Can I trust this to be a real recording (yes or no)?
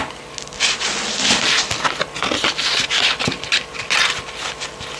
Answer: yes